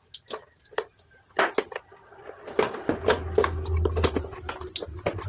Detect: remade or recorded recorded